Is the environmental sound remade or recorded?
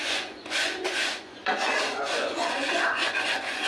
remade